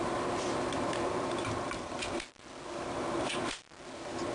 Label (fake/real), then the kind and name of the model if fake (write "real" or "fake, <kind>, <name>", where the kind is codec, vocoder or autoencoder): real